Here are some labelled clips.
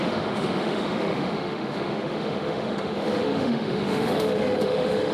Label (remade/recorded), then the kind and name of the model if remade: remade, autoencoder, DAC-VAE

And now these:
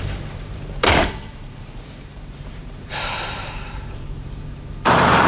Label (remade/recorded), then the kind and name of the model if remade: remade, vocoder, BigVGAN v2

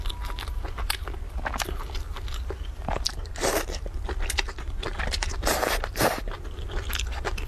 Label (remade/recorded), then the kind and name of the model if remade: remade, vocoder, BigVGAN v2